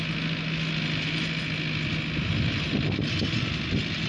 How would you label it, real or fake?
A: real